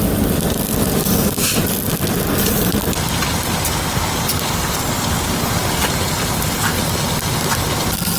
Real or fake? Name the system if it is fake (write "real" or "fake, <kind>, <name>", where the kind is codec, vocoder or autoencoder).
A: real